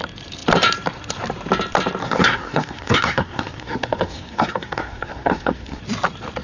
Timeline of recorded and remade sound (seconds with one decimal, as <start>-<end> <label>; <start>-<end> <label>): 0.0-2.0 recorded; 2.0-5.8 remade; 5.8-6.4 recorded